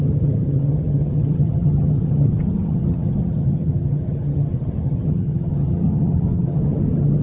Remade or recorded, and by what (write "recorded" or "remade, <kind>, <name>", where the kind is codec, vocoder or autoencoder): remade, vocoder, HiFi-GAN